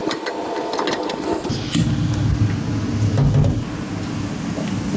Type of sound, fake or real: real